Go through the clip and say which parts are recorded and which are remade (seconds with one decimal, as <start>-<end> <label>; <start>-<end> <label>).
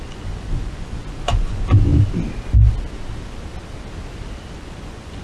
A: 0.0-1.9 remade; 1.9-4.5 recorded; 4.5-5.2 remade